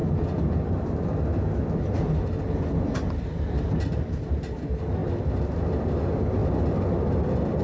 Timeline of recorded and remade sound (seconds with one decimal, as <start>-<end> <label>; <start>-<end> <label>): 0.0-7.6 recorded